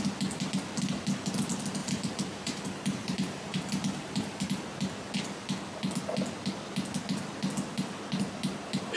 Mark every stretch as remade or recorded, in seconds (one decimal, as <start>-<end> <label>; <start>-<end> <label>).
0.0-1.8 recorded; 1.8-4.6 remade; 4.6-9.0 recorded